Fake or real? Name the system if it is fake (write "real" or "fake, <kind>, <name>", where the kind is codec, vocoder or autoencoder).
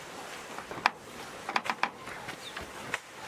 real